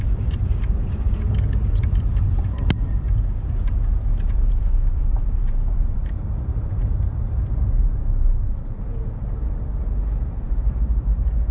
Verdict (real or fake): fake